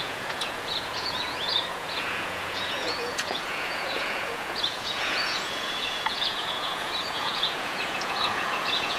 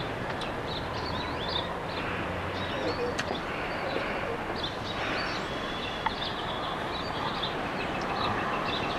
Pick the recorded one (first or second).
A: second